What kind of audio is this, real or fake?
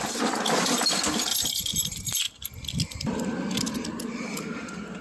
real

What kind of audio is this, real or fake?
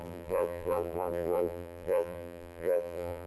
fake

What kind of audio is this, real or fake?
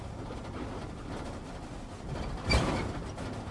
real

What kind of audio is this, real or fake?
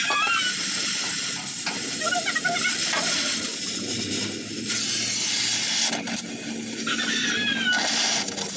real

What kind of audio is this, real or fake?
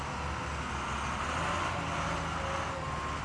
real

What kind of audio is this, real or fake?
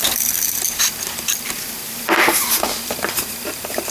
fake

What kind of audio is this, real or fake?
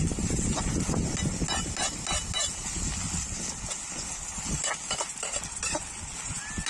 real